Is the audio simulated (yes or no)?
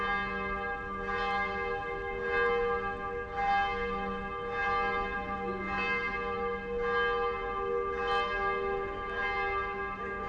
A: no